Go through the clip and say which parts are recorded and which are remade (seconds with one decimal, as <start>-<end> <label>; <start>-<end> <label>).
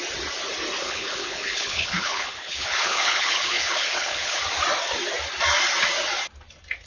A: 0.0-0.8 recorded; 0.8-4.4 remade; 4.4-6.9 recorded